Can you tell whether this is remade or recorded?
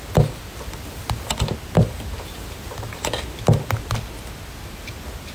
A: recorded